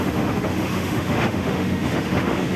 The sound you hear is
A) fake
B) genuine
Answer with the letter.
A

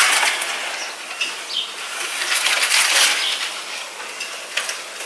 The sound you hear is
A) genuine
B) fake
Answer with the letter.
A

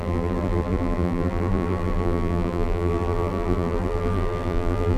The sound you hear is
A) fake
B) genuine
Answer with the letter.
A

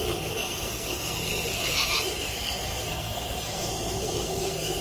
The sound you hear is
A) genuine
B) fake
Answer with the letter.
B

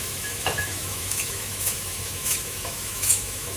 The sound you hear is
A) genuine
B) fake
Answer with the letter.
B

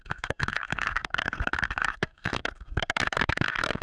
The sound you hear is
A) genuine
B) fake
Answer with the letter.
B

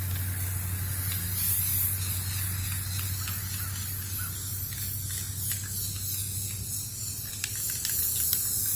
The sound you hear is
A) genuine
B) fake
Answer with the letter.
A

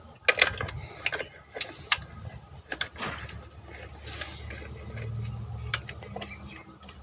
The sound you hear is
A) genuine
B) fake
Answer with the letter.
A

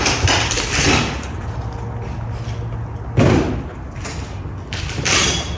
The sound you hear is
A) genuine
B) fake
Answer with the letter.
A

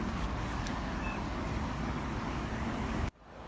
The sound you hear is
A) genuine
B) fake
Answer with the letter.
B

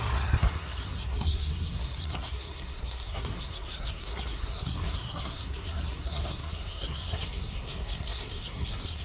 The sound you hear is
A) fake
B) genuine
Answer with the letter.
A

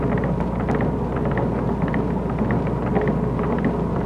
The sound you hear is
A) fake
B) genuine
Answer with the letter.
B